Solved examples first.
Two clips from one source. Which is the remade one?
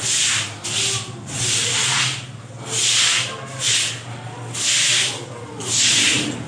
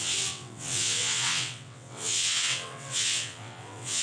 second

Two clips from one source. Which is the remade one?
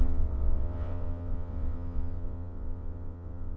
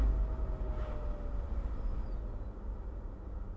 first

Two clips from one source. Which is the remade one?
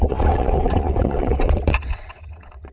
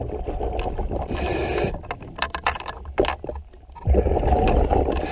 first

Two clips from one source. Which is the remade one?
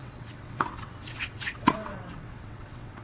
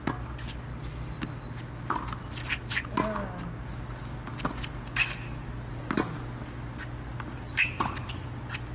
first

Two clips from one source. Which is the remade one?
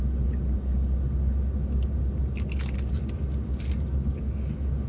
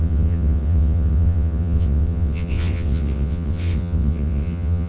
second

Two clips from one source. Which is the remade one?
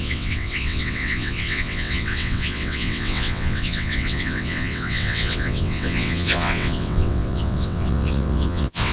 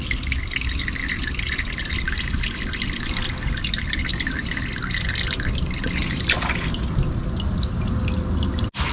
first